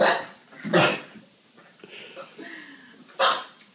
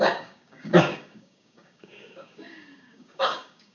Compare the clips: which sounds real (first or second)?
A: first